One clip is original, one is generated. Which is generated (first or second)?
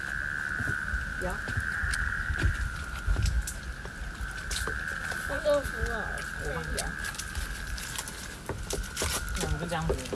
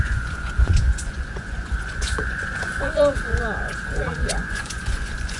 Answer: second